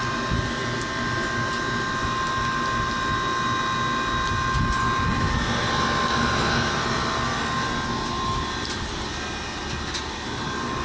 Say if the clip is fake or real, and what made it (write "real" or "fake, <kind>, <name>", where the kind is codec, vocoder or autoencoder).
real